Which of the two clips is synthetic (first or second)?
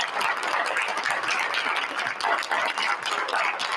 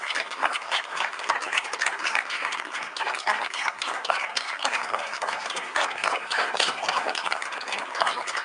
second